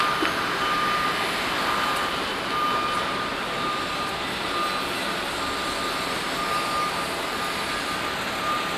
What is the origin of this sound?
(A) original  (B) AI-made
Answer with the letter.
A